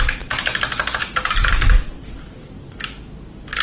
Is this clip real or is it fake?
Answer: real